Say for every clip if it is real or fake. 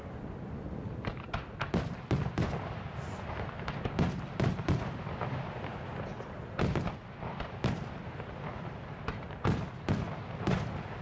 real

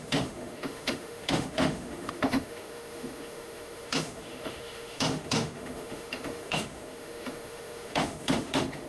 fake